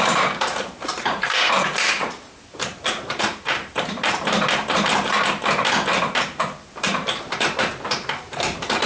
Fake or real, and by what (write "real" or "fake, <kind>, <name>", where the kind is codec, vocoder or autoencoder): fake, vocoder, BigVGAN v2